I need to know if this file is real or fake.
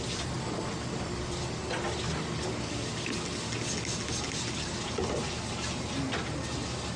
real